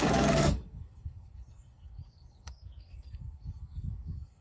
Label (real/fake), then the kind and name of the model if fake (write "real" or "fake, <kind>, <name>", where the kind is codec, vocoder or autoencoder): fake, codec, SNAC